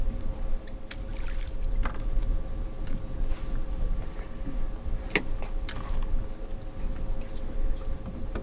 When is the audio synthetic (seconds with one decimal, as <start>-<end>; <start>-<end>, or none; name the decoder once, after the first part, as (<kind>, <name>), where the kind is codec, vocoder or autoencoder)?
none